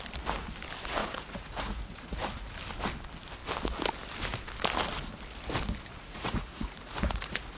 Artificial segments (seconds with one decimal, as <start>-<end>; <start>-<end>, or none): 1.0-2.6; 5.9-7.6